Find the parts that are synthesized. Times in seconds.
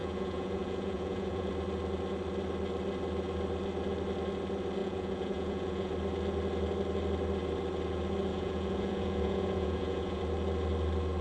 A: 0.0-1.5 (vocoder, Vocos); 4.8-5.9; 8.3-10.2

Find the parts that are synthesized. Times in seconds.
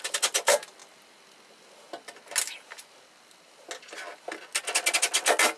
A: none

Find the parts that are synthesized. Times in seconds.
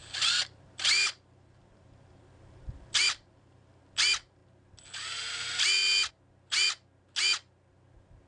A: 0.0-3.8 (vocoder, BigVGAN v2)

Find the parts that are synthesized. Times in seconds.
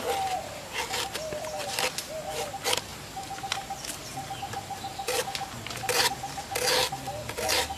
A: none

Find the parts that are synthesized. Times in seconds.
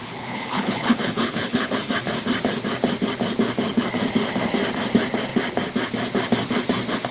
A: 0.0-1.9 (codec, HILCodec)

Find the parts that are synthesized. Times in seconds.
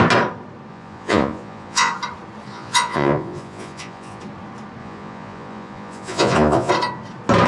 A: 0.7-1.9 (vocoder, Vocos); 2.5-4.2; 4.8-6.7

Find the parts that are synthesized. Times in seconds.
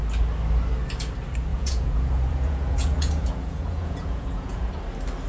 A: 1.5-4.7 (vocoder, Vocos)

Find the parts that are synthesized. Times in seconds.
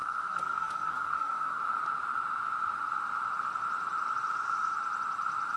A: 0.0-1.6 (codec, SNAC)